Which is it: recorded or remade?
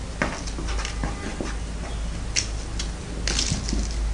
recorded